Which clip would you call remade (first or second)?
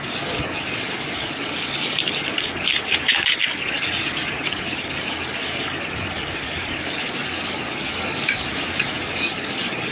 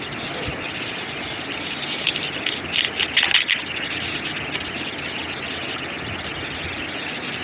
first